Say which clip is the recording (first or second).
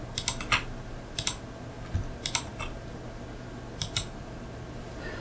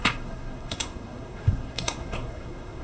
first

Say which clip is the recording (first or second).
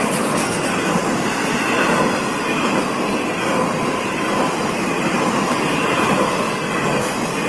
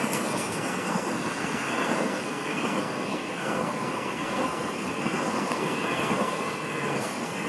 first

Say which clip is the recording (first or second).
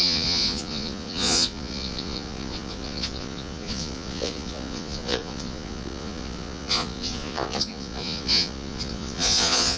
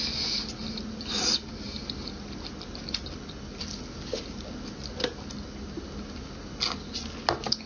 second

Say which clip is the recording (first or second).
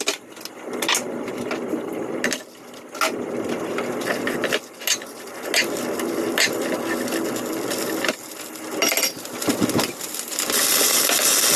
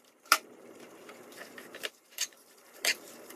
first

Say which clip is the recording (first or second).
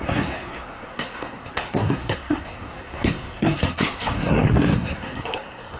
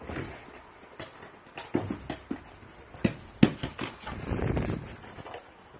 second